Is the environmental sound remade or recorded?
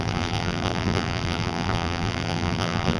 remade